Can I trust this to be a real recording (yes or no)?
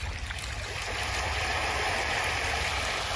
yes